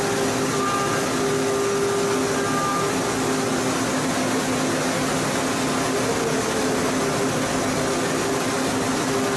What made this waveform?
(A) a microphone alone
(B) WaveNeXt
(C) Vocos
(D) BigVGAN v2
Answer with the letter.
A